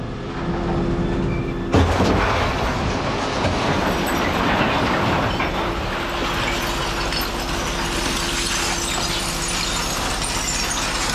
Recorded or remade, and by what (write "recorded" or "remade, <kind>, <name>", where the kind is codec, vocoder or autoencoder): recorded